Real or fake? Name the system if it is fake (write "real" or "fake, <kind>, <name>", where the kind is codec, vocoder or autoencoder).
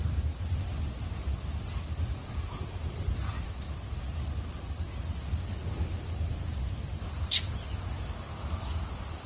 real